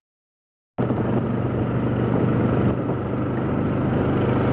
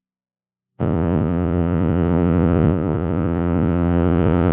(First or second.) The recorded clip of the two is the first